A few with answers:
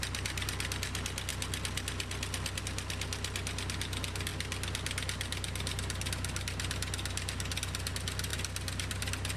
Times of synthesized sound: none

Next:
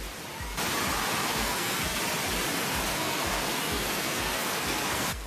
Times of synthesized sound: 1.2-2.0; 2.9-5.3

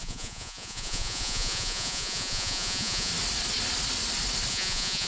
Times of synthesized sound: 0.0-3.1; 4.5-5.1

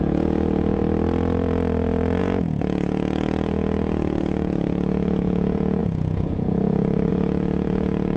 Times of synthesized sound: 0.0-0.8; 2.2-8.2

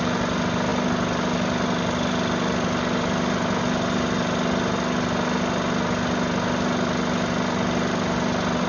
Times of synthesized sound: none

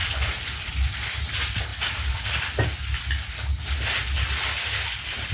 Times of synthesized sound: 0.0-0.7; 1.7-2.8